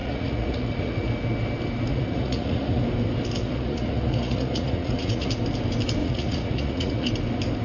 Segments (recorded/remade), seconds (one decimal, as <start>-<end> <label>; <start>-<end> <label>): 0.0-1.1 remade; 1.1-1.9 recorded; 1.9-2.8 remade; 2.8-3.4 recorded; 3.4-5.3 remade; 5.3-6.0 recorded; 6.0-7.1 remade; 7.1-7.6 recorded